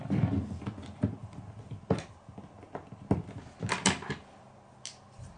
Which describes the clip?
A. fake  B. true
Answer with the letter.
B